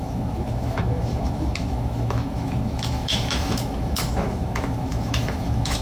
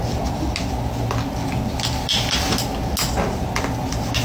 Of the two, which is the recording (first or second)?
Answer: second